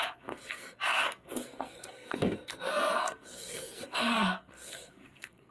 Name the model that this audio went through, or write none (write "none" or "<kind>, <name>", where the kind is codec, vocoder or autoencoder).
codec, SNAC